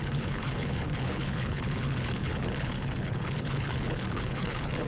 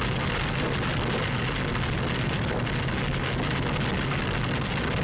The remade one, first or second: first